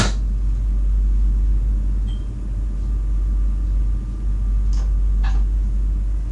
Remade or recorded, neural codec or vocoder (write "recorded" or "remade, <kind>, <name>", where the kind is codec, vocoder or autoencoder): recorded